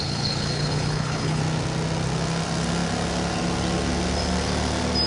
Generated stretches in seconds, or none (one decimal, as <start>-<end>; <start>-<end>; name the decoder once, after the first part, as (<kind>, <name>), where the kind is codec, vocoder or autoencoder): 0.0-1.4 (codec, HILCodec)